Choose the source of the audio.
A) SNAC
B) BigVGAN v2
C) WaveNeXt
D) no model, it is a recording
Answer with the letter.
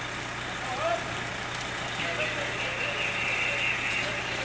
D